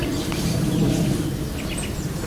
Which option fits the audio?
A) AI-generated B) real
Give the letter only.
B